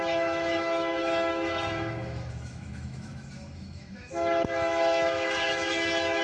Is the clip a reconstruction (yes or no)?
yes